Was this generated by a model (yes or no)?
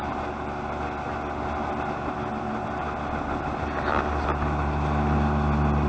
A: no